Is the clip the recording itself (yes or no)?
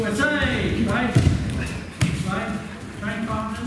yes